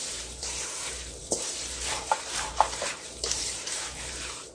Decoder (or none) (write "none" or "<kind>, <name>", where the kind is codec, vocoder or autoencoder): vocoder, BigVGAN v2